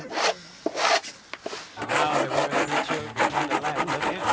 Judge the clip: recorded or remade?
recorded